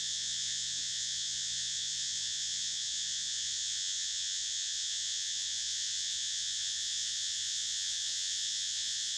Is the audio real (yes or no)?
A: no